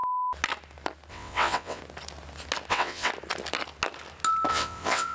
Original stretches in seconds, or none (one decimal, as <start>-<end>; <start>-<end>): 0.0-1.1; 1.8-2.7; 3.1-4.5

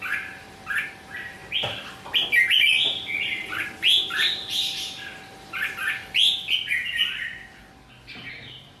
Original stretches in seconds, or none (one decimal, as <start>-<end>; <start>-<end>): 1.4-3.4; 6.0-8.3

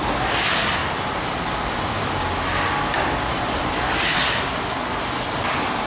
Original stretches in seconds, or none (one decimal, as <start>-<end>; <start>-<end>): 0.0-5.9

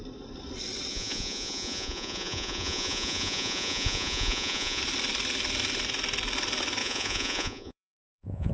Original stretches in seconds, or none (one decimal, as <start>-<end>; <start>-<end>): 0.0-0.9; 4.8-6.8

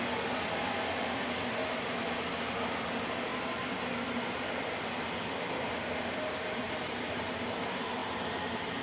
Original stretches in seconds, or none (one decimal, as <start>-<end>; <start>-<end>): 0.0-8.8